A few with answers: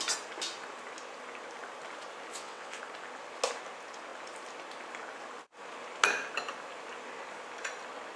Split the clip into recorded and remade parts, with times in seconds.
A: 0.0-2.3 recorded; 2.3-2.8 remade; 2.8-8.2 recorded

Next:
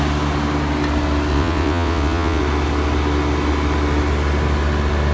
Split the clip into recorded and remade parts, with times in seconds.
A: 0.0-1.3 recorded; 1.3-2.4 remade; 2.4-5.1 recorded